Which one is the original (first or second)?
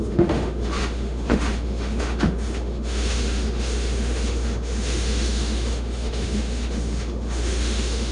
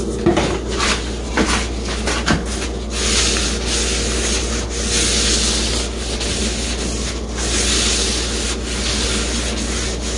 second